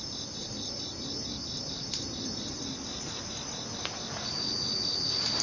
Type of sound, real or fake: real